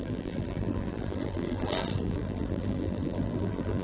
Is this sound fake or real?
fake